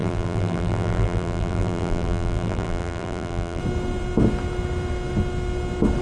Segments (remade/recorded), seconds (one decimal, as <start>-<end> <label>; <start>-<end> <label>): 0.0-3.6 remade; 3.6-6.0 recorded